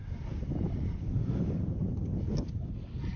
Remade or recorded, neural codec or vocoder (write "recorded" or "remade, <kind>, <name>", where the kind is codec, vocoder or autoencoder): recorded